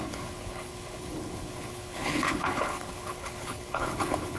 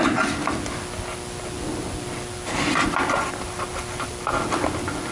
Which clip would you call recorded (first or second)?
second